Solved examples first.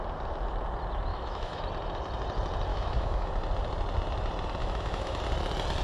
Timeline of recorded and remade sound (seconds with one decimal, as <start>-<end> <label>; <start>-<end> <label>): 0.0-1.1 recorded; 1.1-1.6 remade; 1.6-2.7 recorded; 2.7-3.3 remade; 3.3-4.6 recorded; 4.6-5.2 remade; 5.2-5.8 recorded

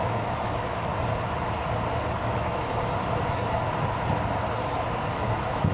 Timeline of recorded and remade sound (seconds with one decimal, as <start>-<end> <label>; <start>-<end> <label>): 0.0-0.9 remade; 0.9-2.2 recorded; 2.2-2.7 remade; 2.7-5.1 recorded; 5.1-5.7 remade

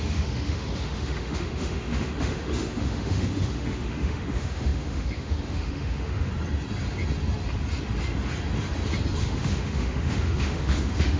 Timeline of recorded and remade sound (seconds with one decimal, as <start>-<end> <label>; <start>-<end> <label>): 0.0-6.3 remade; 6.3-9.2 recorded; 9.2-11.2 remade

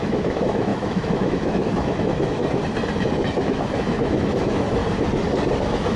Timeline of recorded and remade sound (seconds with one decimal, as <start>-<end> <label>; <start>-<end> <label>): 0.0-2.4 remade; 2.4-3.4 recorded; 3.4-4.8 remade; 4.8-5.6 recorded; 5.6-6.0 remade